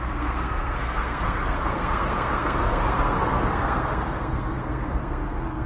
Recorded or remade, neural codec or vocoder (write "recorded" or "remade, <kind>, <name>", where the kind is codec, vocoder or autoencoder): remade, codec, SNAC